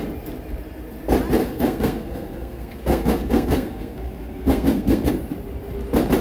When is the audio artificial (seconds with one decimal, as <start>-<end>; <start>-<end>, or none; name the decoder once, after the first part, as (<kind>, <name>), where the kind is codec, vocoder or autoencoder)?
1.4-5.1 (codec, SNAC)